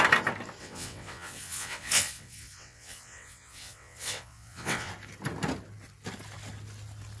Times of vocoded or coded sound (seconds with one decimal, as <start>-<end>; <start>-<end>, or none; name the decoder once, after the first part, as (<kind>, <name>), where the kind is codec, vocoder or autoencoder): 0.6-4.9 (vocoder, WaveNeXt)